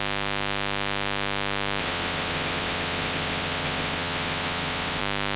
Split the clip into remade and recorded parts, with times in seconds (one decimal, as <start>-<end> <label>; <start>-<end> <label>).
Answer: 0.0-1.8 recorded; 1.8-5.0 remade; 5.0-5.4 recorded